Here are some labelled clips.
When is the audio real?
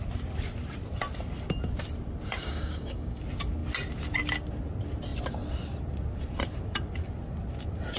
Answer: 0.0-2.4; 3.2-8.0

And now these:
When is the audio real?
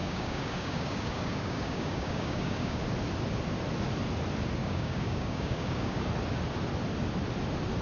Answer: 2.8-4.6; 6.0-7.8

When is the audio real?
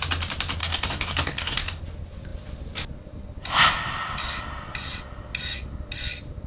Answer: 0.0-0.6; 1.8-6.5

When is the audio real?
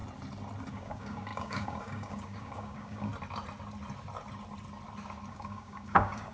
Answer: 0.0-0.7; 3.1-5.3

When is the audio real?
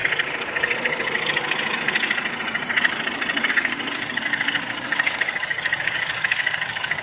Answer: 0.0-3.5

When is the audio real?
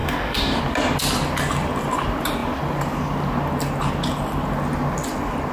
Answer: 0.6-5.5